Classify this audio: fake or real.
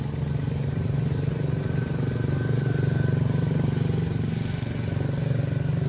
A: real